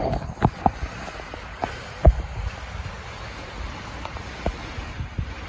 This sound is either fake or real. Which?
real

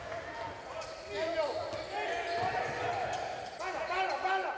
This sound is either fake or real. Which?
real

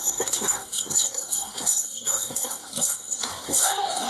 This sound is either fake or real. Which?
fake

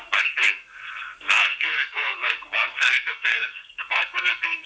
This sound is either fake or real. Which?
fake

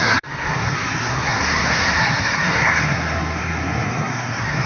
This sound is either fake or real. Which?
fake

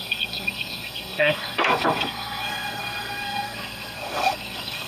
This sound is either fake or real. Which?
fake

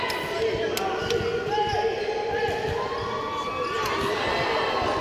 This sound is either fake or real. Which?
real